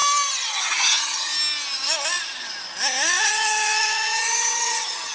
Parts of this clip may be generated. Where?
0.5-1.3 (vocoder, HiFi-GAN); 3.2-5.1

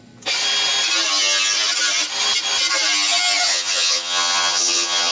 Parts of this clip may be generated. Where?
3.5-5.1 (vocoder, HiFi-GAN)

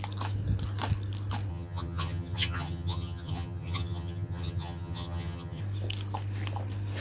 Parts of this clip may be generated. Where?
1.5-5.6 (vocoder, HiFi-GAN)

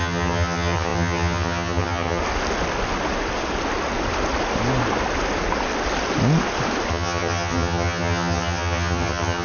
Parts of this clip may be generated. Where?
0.0-2.2 (vocoder, HiFi-GAN); 6.9-9.4